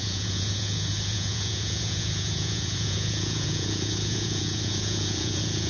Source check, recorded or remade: remade